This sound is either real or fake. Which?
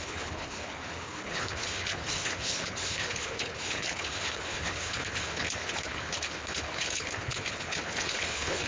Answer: fake